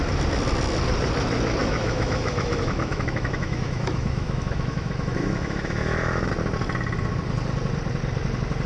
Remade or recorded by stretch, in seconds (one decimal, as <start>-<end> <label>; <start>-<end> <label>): 0.0-1.6 recorded; 1.6-6.3 remade; 6.3-8.7 recorded